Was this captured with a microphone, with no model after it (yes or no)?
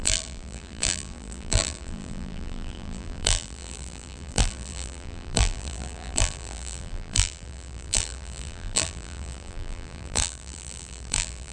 no